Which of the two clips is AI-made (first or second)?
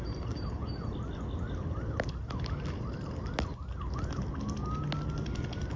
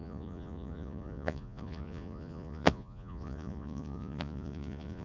second